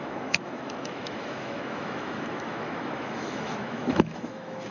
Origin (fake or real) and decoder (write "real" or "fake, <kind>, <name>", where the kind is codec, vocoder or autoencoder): fake, autoencoder, DAC-VAE